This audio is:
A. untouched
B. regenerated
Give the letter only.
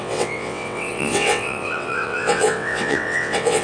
B